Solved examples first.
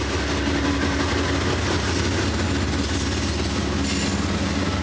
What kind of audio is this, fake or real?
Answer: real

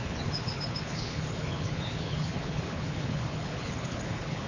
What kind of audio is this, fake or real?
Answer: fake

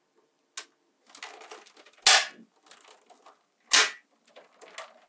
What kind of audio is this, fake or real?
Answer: real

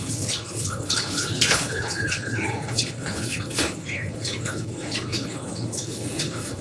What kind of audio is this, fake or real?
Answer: fake